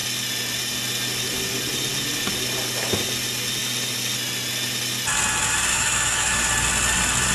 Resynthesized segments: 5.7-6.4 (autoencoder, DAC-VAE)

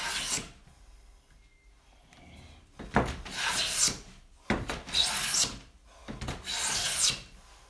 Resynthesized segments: none

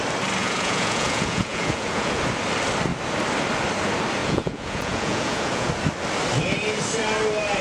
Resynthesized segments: 0.4-2.2 (vocoder, Vocos); 4.2-5.7

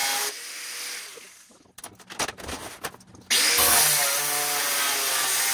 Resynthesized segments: none

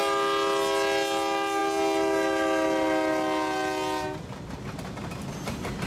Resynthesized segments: none